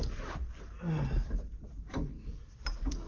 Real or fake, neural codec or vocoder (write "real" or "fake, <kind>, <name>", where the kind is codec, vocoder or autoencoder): real